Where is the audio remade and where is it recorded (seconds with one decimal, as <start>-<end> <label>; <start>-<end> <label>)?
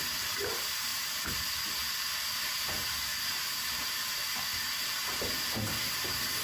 0.0-6.4 recorded